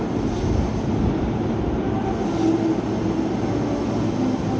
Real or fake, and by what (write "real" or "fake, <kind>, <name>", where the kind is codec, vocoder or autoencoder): real